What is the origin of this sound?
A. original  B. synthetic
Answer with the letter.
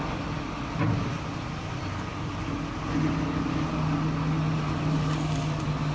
A